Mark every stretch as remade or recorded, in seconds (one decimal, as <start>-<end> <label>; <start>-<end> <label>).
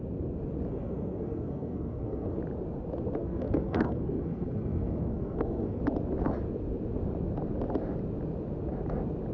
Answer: 0.0-0.7 recorded; 0.7-2.4 remade; 2.4-3.2 recorded; 3.2-5.8 remade; 5.8-9.3 recorded